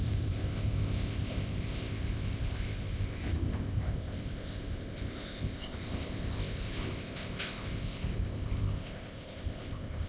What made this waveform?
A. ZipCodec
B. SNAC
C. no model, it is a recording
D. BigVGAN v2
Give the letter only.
A